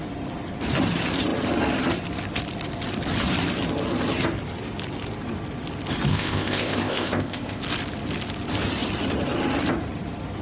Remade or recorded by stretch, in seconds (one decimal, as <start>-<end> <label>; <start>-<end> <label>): 0.0-6.1 recorded; 6.1-7.6 remade; 7.6-10.4 recorded